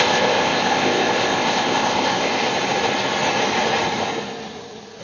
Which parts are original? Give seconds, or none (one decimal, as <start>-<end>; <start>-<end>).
2.5-5.0